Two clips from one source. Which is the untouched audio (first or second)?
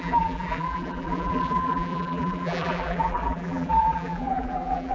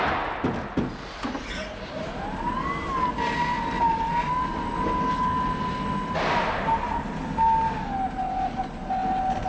second